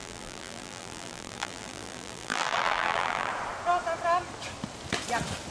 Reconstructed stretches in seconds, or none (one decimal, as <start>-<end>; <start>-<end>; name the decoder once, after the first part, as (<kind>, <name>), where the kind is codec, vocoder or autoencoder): 0.0-3.3 (vocoder, BigVGAN v2)